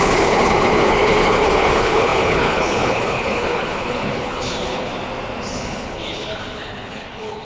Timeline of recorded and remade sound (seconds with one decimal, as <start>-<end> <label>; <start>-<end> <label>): 0.0-4.9 remade; 4.9-5.5 recorded; 5.5-7.4 remade